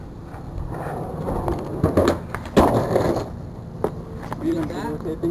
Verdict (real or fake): real